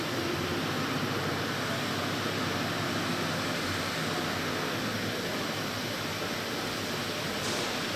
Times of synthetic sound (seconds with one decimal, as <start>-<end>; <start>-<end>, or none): 0.0-3.0